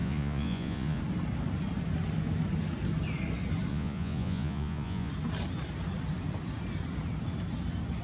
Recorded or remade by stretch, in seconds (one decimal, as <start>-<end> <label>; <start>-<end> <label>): 0.0-1.0 remade; 1.0-3.7 recorded; 3.7-5.1 remade; 5.1-8.0 recorded